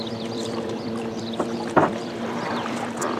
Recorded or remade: remade